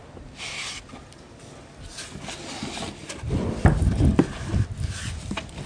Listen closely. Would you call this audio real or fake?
real